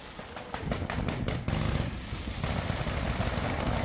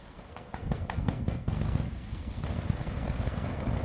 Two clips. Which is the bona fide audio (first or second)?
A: first